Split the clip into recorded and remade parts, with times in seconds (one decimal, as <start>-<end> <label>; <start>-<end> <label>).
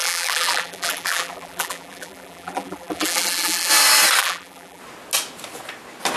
0.0-3.7 remade; 3.7-4.2 recorded; 4.2-4.8 remade; 4.8-6.2 recorded